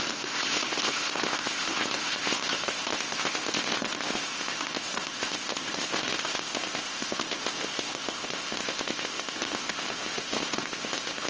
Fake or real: fake